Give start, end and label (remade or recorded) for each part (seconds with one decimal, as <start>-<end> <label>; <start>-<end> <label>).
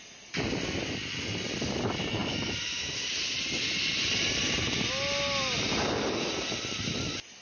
0.0-3.9 recorded; 3.9-4.7 remade; 4.7-7.4 recorded